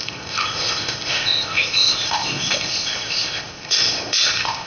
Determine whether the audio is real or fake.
fake